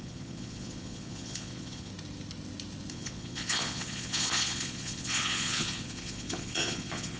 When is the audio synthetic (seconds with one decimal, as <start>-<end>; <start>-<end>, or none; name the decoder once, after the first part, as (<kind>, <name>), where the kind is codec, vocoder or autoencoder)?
0.0-1.9 (vocoder, Vocos); 2.9-7.2